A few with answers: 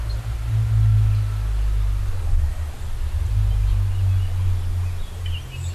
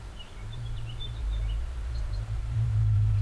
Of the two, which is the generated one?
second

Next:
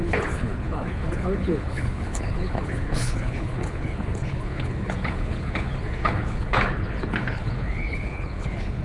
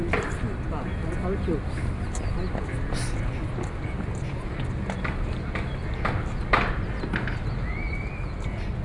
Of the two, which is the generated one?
first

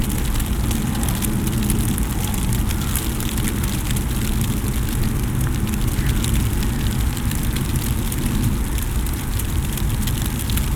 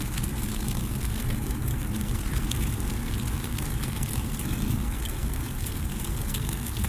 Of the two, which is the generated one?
second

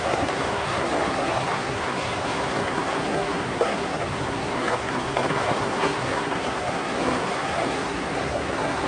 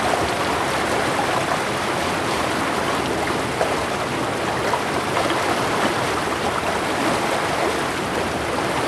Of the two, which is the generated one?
first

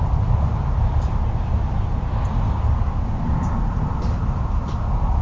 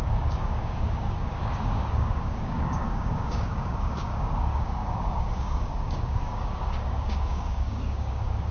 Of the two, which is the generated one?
second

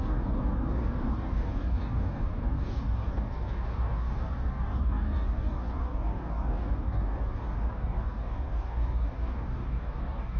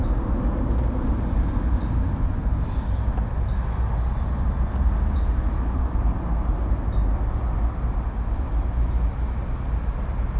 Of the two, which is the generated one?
first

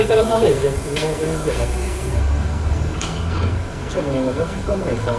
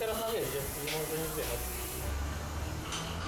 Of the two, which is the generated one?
first